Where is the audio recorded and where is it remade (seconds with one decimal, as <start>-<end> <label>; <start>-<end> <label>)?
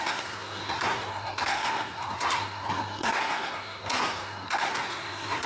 0.0-5.5 remade